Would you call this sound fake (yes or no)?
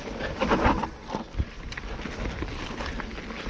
no